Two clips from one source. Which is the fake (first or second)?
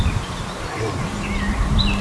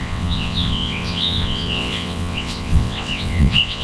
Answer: second